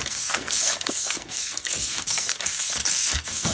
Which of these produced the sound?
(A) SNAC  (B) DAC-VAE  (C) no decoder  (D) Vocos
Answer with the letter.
A